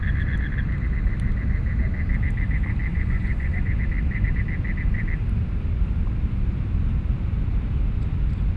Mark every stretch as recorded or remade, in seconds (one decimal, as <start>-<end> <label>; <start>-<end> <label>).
0.0-2.9 recorded; 2.9-3.8 remade; 3.8-8.6 recorded